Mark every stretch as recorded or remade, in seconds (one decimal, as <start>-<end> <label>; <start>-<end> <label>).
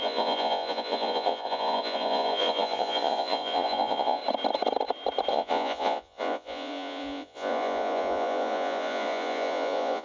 0.0-4.2 remade; 4.2-5.3 recorded; 5.3-10.0 remade